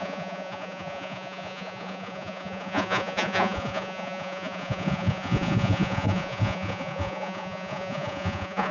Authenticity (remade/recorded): remade